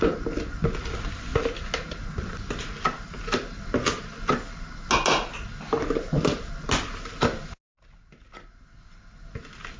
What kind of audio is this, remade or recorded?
recorded